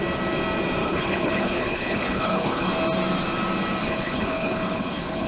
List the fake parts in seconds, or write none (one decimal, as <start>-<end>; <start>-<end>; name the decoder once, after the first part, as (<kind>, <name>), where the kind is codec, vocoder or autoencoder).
0.8-2.7 (codec, HILCodec); 3.8-5.3